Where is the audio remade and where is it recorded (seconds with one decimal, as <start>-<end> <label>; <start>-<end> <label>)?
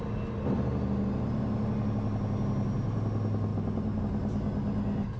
0.0-5.2 recorded